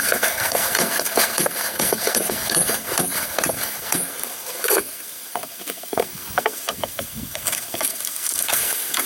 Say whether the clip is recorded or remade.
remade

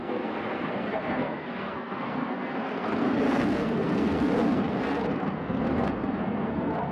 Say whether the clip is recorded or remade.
remade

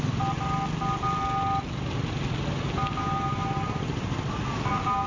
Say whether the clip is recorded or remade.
recorded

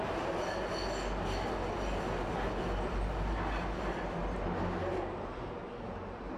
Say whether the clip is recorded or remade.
recorded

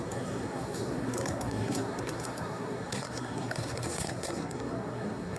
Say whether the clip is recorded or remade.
remade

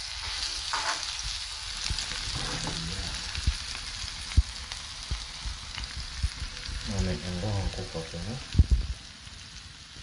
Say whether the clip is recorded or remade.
recorded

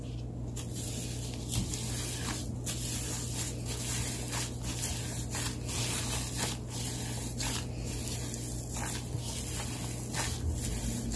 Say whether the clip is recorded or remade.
recorded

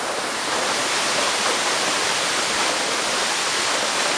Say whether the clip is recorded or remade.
recorded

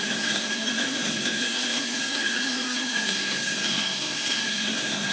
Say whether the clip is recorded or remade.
remade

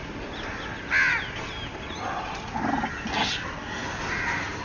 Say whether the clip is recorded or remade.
recorded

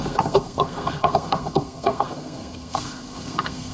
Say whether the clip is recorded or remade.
remade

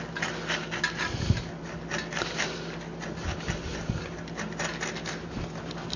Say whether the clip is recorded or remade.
recorded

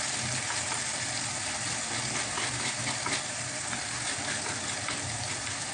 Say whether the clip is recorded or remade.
recorded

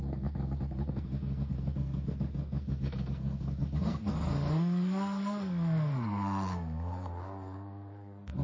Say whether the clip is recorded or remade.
remade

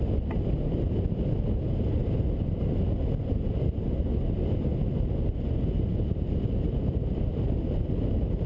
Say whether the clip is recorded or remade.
recorded